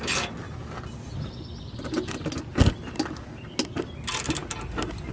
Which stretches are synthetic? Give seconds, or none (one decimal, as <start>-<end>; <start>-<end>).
none